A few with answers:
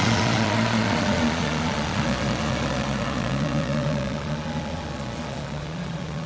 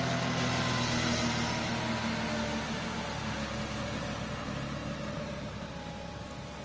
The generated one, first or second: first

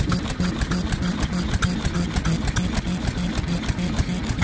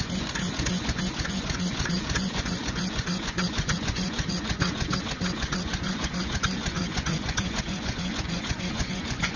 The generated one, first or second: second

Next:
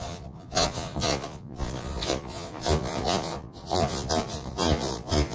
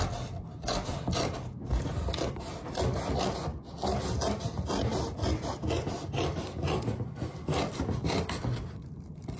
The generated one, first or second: first